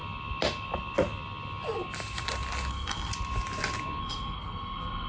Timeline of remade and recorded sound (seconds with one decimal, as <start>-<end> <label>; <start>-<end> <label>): 0.0-2.7 recorded; 2.7-3.1 remade; 3.1-4.0 recorded; 4.0-5.1 remade